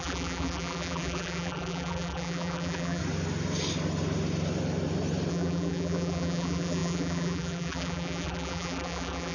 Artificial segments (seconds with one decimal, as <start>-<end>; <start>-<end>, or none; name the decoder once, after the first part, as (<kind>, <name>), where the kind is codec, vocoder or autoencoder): 0.0-3.0 (vocoder, BigVGAN v2); 5.3-9.3